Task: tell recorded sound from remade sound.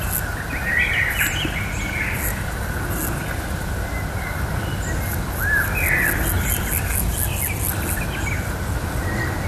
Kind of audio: recorded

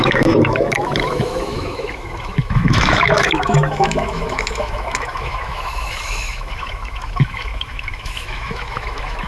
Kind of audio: remade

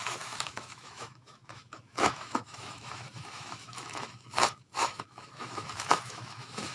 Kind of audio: remade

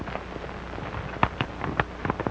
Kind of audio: recorded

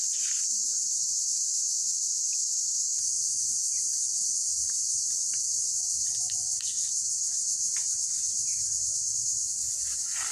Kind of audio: recorded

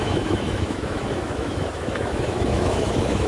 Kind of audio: remade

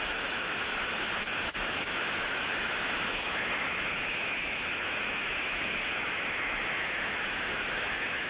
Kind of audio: remade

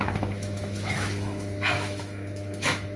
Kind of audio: remade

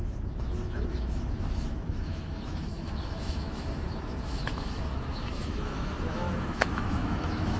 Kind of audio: remade